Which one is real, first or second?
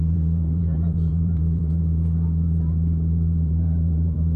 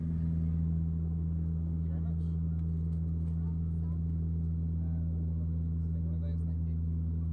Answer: second